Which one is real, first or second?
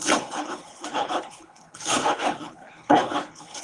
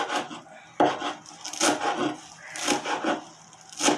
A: second